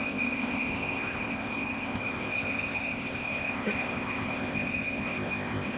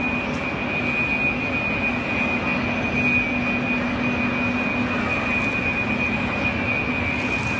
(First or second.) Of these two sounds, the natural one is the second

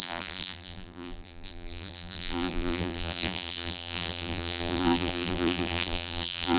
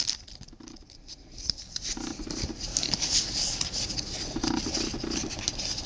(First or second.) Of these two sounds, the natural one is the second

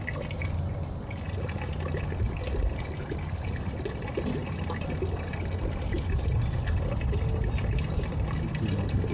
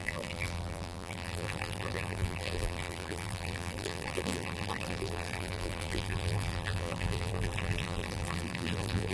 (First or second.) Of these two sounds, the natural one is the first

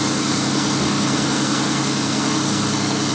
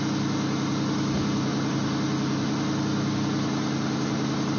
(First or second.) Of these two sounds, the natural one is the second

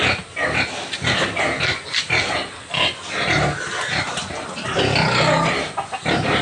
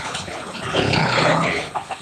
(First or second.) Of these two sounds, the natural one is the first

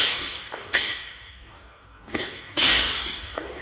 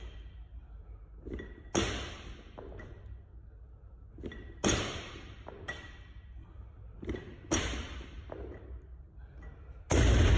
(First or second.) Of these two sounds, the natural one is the second